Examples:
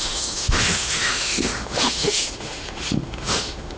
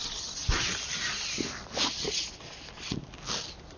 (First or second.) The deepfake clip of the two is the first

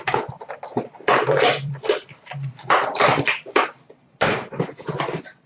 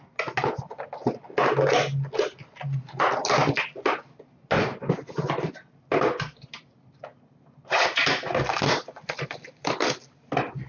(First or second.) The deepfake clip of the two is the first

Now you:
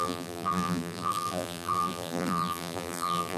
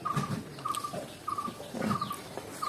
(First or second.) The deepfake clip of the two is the first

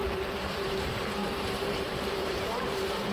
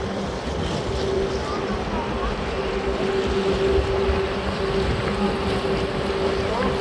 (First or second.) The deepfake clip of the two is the first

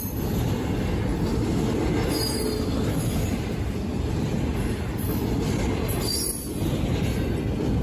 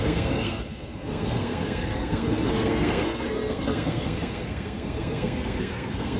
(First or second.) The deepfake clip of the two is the second